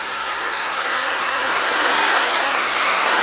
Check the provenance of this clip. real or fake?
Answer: fake